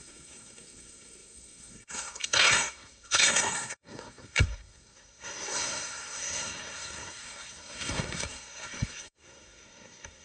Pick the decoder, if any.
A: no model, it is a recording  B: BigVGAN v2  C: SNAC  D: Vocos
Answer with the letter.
C